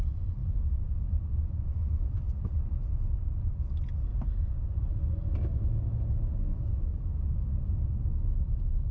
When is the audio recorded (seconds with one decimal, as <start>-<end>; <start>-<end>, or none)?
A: 0.0-0.4; 3.5-4.1; 4.9-6.9; 7.5-8.9